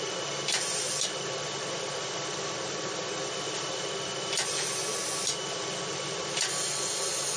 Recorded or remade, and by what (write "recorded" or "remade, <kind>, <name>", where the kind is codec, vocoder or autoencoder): recorded